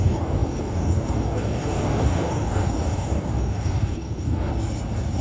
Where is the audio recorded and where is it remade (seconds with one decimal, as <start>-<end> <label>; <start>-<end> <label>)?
0.0-4.5 remade; 4.5-5.2 recorded